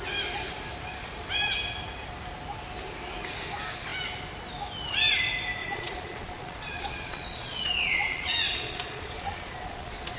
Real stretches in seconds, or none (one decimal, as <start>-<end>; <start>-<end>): 0.0-5.6